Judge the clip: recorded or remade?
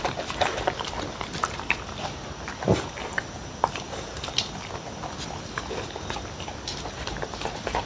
recorded